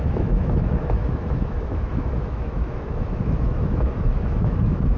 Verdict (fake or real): fake